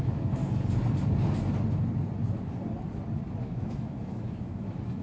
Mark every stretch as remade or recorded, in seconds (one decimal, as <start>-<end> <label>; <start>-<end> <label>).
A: 0.0-0.4 remade; 0.4-3.4 recorded; 3.4-5.0 remade

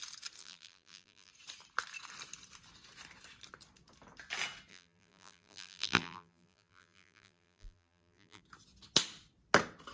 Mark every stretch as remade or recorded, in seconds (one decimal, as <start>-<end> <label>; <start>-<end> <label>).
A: 0.0-0.4 recorded; 0.4-1.3 remade; 1.3-4.7 recorded; 4.7-8.4 remade; 8.4-9.9 recorded

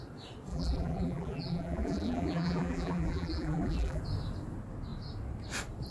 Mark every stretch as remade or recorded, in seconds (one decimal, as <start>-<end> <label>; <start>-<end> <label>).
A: 0.0-0.5 recorded; 0.5-4.0 remade; 4.0-5.9 recorded

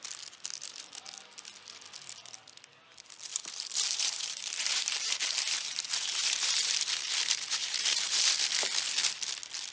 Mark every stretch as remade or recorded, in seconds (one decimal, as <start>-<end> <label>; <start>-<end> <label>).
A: 0.0-3.3 recorded; 3.3-8.2 remade; 8.2-9.7 recorded